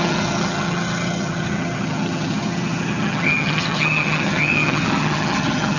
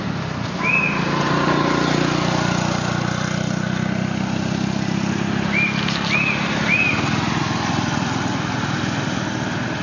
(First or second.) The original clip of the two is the second